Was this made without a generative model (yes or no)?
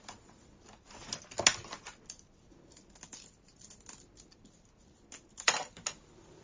yes